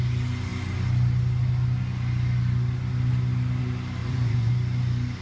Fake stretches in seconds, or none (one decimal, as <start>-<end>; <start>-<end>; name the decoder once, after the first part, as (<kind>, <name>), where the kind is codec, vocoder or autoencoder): 4.0-4.5 (vocoder, Vocos)